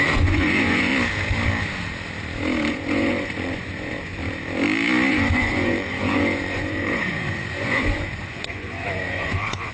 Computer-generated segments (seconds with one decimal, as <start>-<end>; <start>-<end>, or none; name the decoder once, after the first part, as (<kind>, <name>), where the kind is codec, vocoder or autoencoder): 0.0-0.9 (vocoder, Vocos); 2.7-4.2; 5.1-9.7